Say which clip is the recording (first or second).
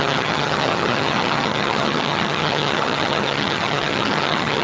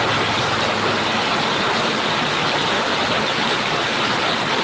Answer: second